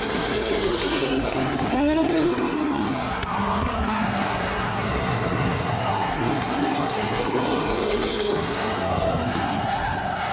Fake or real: fake